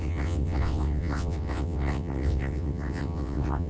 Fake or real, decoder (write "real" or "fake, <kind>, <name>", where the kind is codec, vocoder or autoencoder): fake, vocoder, WaveNeXt